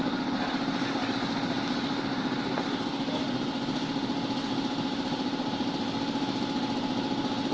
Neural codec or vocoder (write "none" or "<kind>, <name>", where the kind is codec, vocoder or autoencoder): none